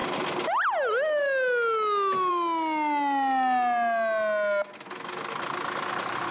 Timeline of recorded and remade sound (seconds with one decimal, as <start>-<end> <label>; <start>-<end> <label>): 0.0-6.3 recorded